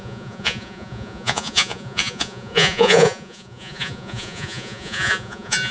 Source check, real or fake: fake